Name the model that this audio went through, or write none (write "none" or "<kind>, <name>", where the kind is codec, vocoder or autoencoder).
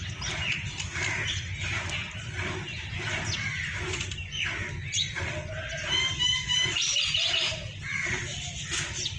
none